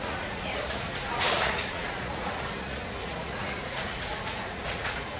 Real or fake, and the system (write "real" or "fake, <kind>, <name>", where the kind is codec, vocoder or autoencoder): fake, vocoder, Vocos